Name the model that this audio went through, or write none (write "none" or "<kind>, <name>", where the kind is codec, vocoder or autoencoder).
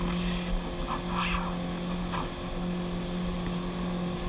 none